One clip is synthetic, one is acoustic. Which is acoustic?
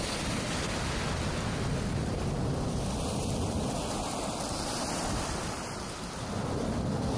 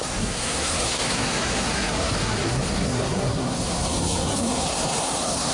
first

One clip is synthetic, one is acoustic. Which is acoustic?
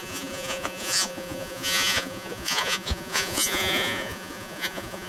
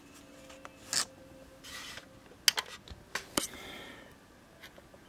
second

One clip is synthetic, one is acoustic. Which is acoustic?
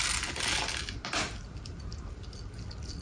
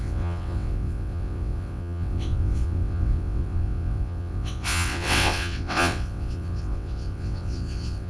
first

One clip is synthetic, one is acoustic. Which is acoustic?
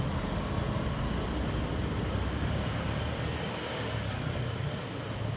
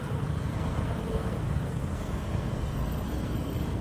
first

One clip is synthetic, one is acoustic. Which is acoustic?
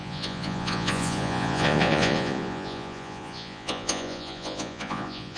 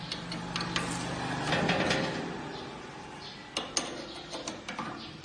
second